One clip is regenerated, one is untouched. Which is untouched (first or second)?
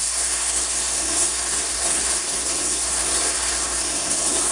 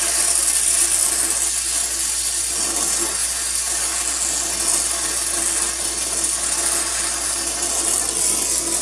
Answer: second